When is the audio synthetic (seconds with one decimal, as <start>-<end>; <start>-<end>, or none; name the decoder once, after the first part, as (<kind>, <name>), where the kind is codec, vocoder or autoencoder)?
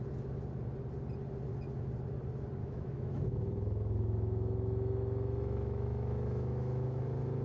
2.6-7.0 (autoencoder, DAC-VAE)